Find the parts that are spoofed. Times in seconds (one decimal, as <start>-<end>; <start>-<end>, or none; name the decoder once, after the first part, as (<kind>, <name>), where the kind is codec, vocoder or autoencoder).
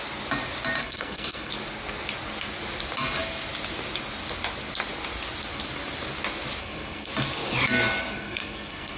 0.8-1.5 (codec, SNAC); 6.6-7.1; 8.0-9.0